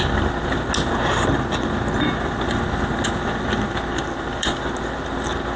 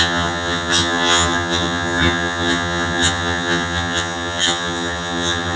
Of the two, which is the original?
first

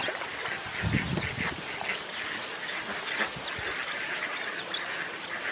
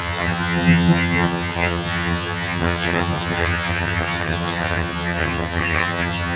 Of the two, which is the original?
first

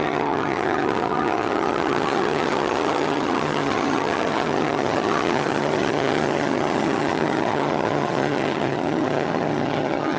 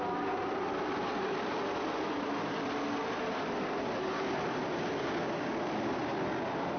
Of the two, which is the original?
second